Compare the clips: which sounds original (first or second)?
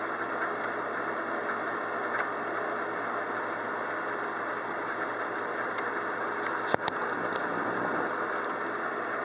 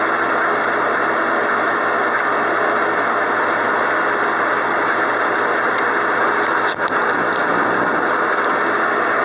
second